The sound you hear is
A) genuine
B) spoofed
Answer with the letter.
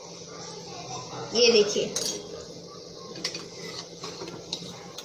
A